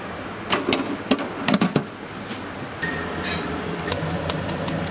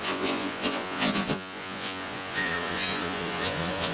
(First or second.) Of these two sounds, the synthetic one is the second